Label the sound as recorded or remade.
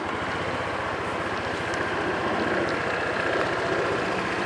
recorded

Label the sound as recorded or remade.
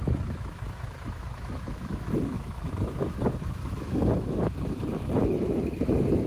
remade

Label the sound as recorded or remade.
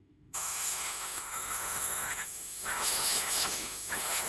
remade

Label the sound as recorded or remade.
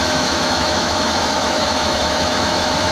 remade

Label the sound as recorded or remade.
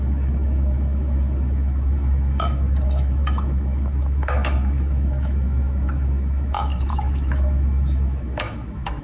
remade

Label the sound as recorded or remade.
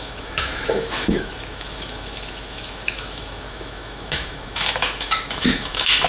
remade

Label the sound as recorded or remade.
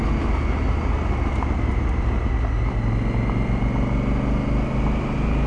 recorded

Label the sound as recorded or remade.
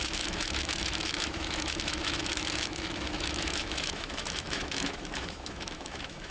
remade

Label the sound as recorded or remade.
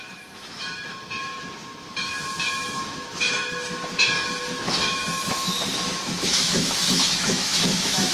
remade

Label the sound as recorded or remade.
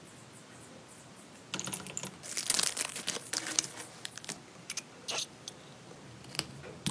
recorded